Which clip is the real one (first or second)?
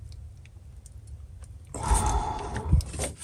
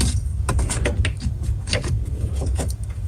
first